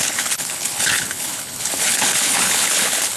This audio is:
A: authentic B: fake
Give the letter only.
B